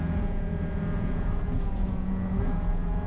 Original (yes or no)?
no